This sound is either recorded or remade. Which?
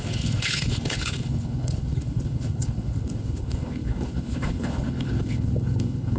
remade